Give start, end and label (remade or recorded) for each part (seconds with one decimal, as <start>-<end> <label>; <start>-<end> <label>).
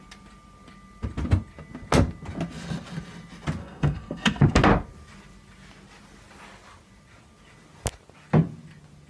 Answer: 0.0-3.6 recorded; 3.6-4.4 remade; 4.4-9.1 recorded